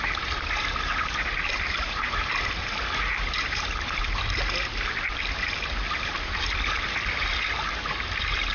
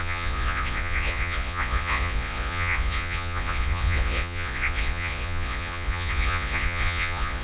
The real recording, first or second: first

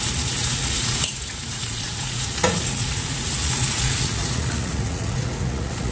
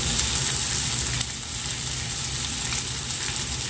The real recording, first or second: second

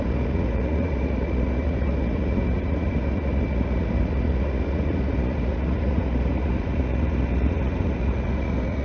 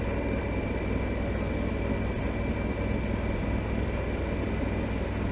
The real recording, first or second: second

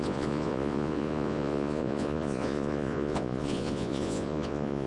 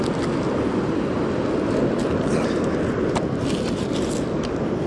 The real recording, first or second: second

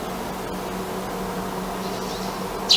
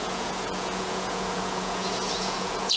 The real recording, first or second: first